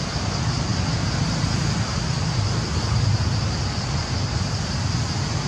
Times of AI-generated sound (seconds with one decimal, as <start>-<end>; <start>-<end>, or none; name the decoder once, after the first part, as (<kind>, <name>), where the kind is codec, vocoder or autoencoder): none